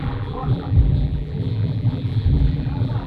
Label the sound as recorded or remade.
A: remade